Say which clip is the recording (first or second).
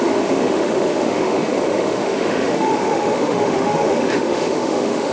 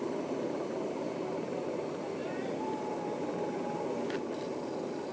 second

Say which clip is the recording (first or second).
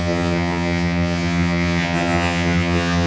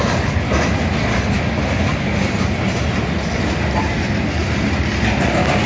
second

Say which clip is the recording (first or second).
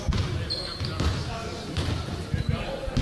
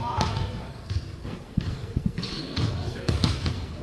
first